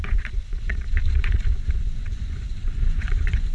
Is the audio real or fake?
fake